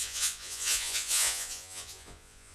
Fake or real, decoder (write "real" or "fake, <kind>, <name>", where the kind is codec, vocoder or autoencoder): fake, vocoder, Vocos